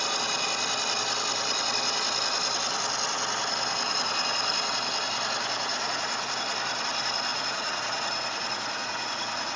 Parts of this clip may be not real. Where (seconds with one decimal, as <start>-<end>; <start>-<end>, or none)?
5.7-6.4; 7.3-9.6